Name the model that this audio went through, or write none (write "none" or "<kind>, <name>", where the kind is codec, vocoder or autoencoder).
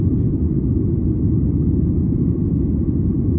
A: vocoder, Vocos